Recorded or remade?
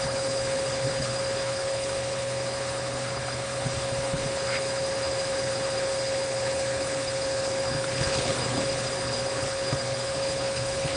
remade